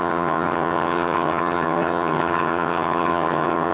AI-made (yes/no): yes